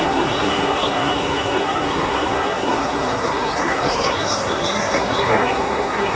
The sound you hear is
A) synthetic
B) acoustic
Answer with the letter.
A